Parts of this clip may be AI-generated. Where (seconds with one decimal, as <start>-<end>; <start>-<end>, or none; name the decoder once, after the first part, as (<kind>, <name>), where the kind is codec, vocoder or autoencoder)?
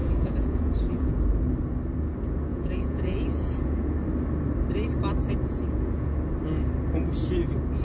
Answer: 0.0-1.1 (vocoder, Vocos); 2.5-3.9; 5.4-6.2